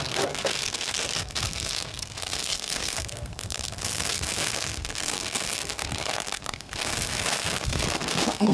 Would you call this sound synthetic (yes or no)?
yes